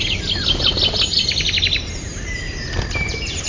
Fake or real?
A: real